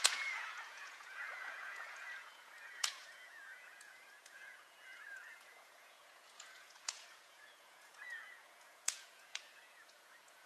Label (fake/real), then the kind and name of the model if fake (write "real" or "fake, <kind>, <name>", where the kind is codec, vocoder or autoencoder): fake, vocoder, Vocos